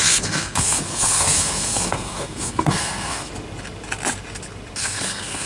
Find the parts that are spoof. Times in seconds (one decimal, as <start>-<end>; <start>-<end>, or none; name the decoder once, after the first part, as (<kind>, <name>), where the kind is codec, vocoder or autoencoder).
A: 0.0-3.3 (codec, SNAC); 4.8-5.5